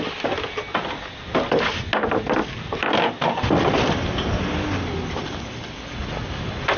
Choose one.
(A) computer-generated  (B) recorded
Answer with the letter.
B